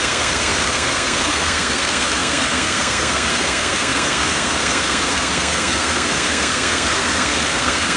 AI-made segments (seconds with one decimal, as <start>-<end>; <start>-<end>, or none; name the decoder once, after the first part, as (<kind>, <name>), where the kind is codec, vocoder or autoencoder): 0.0-8.0 (codec, SNAC)